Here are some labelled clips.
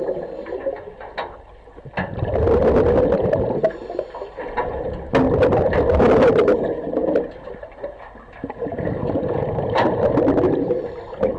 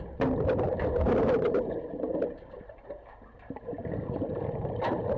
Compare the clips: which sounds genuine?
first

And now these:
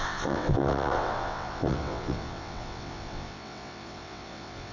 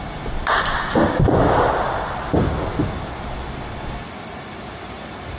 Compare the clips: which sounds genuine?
second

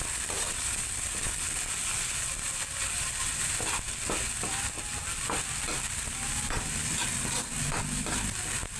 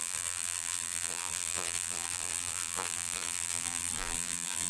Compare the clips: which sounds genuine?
first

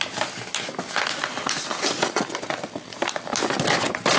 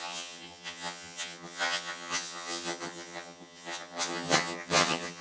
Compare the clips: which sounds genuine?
first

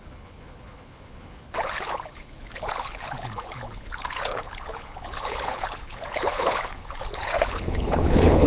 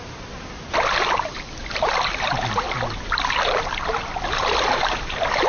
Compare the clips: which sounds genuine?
second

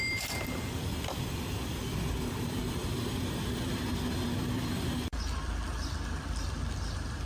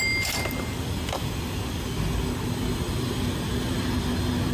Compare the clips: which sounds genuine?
second